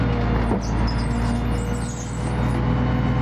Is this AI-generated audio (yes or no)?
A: no